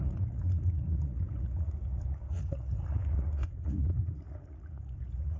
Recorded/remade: remade